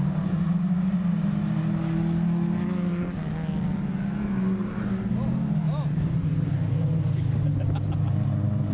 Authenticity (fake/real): real